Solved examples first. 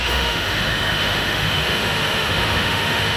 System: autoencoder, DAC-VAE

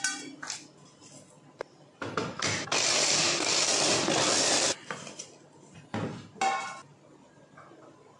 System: none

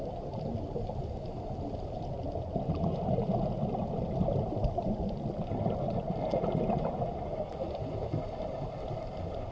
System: none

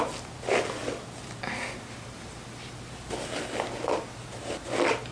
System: none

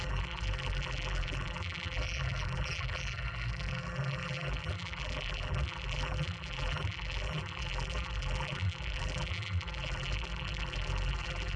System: vocoder, BigVGAN v2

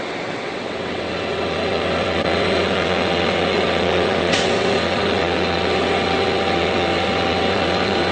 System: vocoder, WaveNeXt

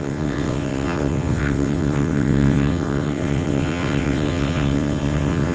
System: vocoder, WaveNeXt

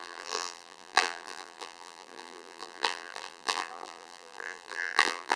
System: vocoder, BigVGAN v2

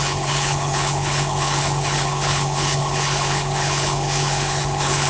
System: codec, HILCodec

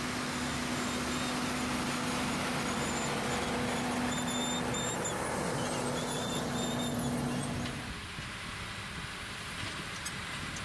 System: none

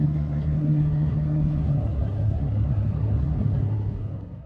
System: codec, SNAC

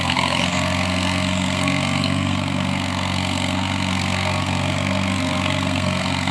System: codec, SNAC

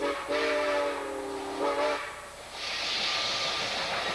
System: none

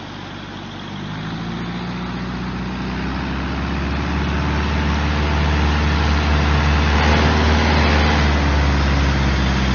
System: none